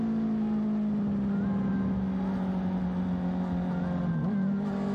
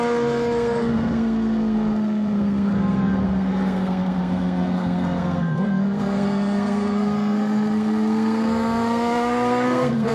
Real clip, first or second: first